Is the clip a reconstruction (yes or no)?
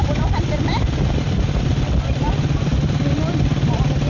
no